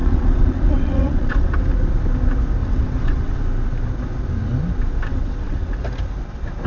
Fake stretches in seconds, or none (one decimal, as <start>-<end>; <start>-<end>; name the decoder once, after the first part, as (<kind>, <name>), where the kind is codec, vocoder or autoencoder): 0.0-1.6 (vocoder, WaveNeXt); 2.6-3.4; 5.1-5.8